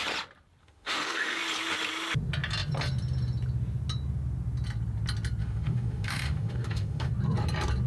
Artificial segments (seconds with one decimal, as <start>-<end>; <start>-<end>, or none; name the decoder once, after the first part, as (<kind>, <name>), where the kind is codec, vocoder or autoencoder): 0.6-1.4 (autoencoder, DAC-VAE); 5.4-7.1